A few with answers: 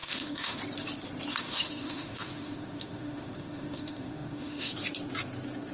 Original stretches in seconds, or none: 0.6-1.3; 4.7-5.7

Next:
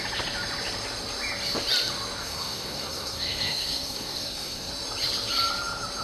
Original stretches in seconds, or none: 0.0-2.2; 4.7-6.0

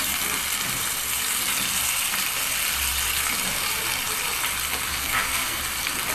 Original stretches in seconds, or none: 0.0-5.0; 5.6-6.1

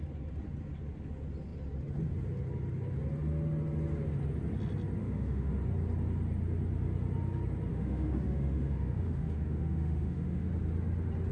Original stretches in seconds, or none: 0.0-5.0; 5.6-7.7; 10.5-11.3